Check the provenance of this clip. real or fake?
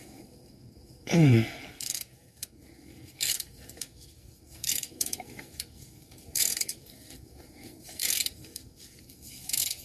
fake